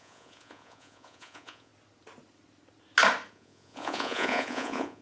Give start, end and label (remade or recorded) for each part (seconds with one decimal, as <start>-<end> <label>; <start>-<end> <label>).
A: 0.0-1.7 remade; 1.7-3.3 recorded; 3.3-5.0 remade